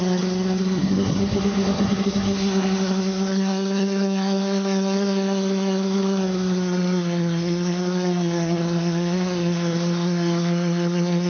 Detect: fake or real fake